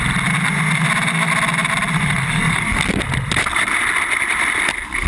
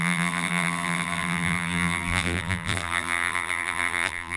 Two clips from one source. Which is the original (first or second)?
first